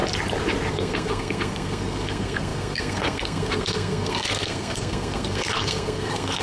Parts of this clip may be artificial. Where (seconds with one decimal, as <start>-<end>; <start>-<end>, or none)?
0.7-6.4